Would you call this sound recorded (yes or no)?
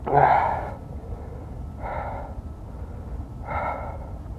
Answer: yes